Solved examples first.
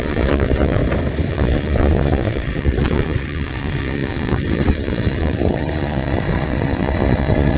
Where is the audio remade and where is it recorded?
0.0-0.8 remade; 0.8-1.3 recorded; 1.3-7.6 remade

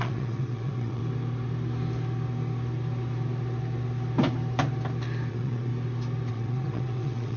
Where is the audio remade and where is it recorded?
0.0-1.0 remade; 1.0-5.3 recorded; 5.3-5.7 remade; 5.7-6.3 recorded; 6.3-7.4 remade

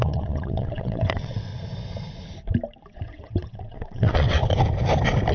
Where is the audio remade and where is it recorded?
0.0-1.5 remade; 1.5-2.9 recorded; 2.9-4.4 remade; 4.4-5.3 recorded

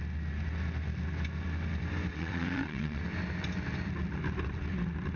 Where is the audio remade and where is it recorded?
0.0-2.1 recorded; 2.1-3.0 remade; 3.0-5.2 recorded

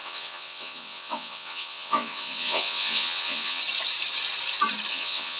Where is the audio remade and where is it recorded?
0.0-3.6 remade; 3.6-4.9 recorded; 4.9-5.4 remade